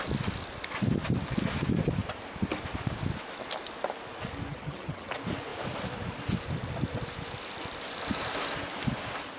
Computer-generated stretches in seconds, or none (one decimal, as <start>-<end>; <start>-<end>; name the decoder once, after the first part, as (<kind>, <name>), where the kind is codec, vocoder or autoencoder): 4.5-5.1 (vocoder, HiFi-GAN)